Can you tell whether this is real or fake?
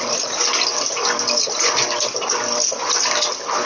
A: real